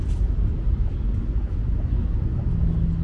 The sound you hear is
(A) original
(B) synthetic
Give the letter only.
A